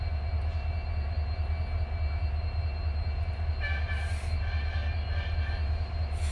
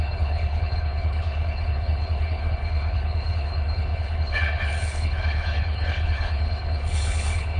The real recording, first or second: first